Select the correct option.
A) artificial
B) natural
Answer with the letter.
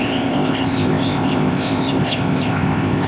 A